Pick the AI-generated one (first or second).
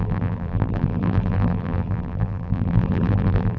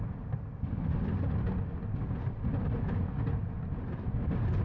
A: first